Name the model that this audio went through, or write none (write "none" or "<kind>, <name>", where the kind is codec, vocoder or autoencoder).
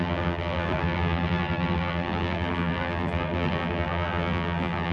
vocoder, BigVGAN v2